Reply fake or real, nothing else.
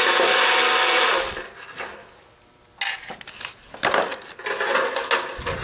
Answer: real